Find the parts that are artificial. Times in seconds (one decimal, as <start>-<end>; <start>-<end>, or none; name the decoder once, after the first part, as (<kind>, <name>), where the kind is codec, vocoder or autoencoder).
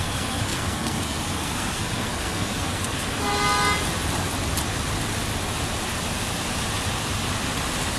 0.0-3.3 (codec, SNAC)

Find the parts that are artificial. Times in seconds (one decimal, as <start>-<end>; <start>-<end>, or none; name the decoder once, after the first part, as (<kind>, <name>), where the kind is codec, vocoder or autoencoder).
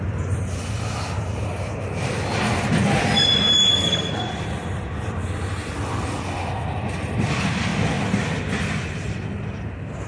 3.7-4.2 (codec, SNAC)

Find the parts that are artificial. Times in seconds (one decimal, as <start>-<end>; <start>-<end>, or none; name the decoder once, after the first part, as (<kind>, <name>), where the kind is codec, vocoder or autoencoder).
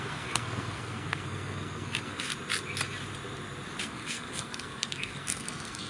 0.0-2.3 (codec, SNAC); 3.8-5.9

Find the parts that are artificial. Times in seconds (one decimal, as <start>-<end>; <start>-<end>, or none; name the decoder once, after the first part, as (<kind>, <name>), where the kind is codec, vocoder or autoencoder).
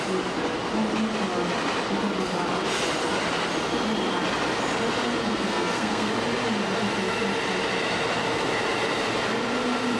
5.2-6.1 (codec, SNAC)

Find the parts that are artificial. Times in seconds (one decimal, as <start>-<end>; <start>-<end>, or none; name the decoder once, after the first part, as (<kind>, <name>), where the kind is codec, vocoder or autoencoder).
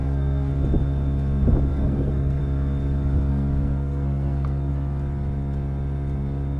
0.0-0.5 (codec, SNAC); 1.7-2.4; 3.3-4.7